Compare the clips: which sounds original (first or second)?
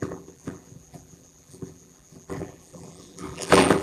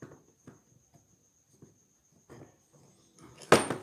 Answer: second